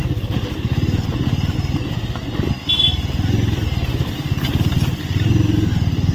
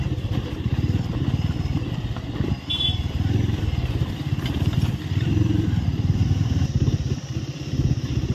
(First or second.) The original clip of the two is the first